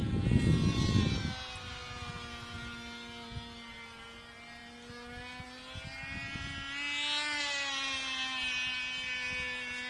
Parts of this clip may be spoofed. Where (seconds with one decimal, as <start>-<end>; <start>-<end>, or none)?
none